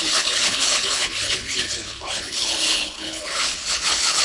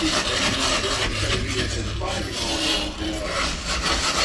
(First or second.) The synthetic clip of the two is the first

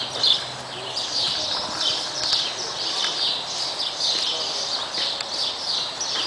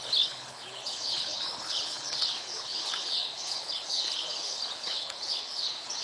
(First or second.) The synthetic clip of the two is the second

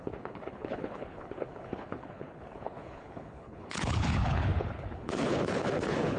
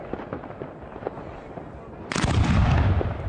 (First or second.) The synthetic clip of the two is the first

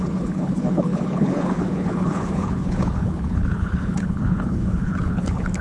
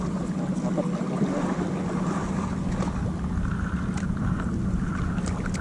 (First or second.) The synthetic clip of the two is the first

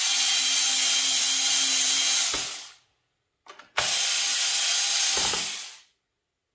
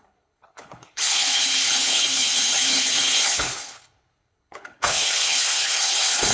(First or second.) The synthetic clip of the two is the second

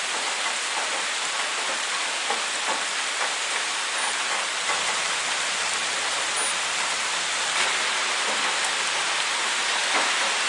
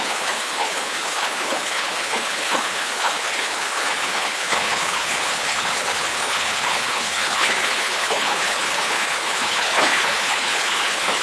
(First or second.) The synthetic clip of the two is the second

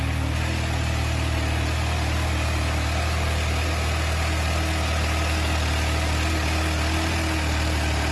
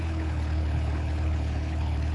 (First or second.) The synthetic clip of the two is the second